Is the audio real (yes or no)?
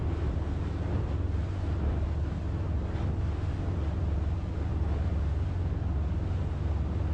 yes